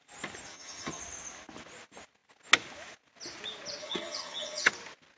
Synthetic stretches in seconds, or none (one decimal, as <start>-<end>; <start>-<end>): 0.5-1.0; 3.8-4.7